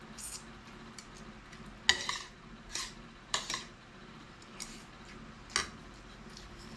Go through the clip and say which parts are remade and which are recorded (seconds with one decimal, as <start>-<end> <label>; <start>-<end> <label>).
0.0-1.9 recorded; 1.9-5.1 remade; 5.1-6.8 recorded